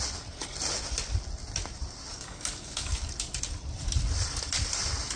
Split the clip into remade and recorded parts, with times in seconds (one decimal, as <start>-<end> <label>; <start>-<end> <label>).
0.0-2.1 recorded; 2.1-3.1 remade; 3.1-5.2 recorded